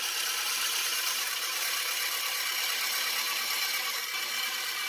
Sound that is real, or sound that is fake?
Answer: real